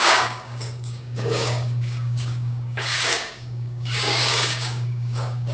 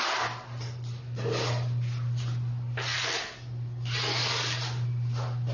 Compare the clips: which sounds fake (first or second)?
first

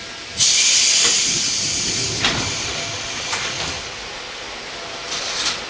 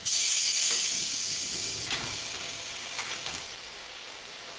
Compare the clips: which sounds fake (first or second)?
second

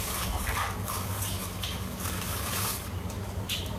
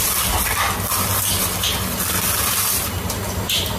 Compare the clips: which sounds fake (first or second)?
first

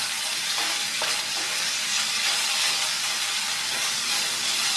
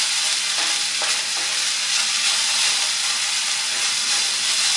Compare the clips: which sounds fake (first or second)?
first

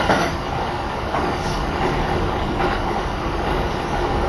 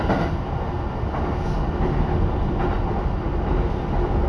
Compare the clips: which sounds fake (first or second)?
first